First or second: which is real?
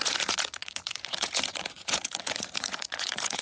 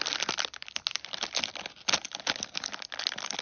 second